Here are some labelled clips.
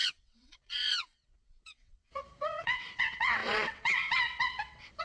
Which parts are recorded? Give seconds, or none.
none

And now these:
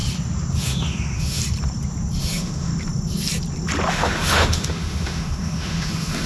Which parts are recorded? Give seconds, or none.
0.0-0.6; 1.4-2.2; 2.7-3.9

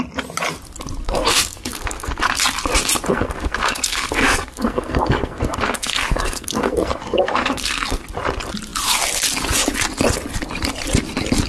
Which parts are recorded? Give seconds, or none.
0.0-1.0; 2.2-3.1; 8.0-11.5

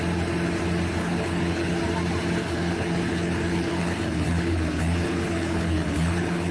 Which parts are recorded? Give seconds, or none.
0.0-1.0; 1.7-2.4